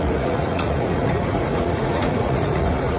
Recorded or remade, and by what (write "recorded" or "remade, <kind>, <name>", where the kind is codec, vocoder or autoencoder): remade, vocoder, Vocos